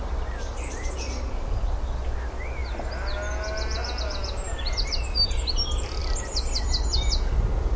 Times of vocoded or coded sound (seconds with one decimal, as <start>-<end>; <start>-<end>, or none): none